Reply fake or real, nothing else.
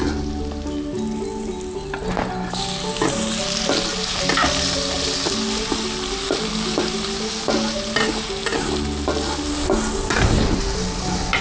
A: real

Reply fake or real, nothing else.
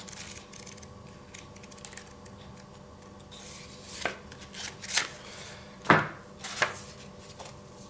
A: real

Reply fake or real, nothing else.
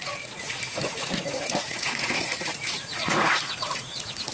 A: fake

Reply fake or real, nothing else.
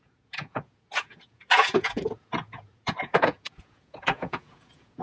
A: fake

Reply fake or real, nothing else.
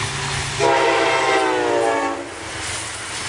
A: real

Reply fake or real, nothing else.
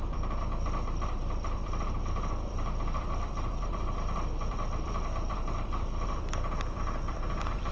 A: fake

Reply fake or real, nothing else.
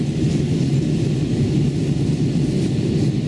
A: real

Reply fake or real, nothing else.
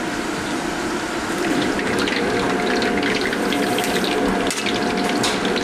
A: real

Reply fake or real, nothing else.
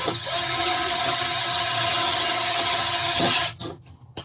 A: fake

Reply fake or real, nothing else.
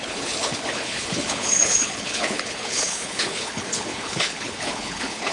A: fake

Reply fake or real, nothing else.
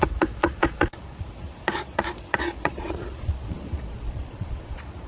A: fake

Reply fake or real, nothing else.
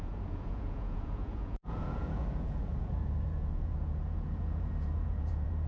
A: fake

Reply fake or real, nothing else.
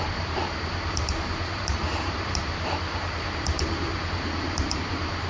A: fake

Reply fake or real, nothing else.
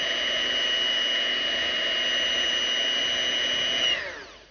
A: real